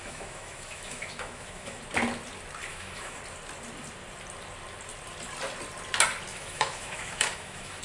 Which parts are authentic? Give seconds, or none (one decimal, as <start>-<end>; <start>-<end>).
1.8-2.7; 3.2-6.3